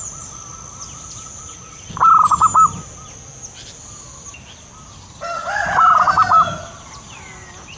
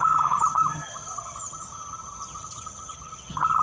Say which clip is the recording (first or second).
first